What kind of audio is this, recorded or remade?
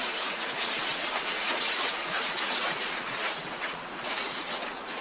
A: remade